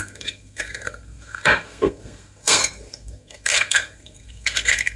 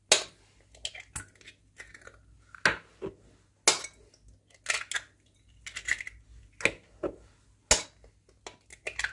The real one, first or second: second